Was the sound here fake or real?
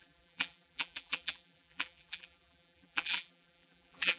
fake